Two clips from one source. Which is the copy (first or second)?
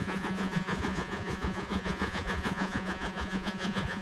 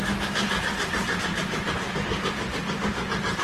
first